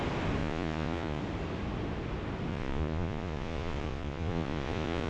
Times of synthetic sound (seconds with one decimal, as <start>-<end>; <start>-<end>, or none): 0.4-1.2; 2.5-5.1